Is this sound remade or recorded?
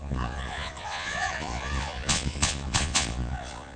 remade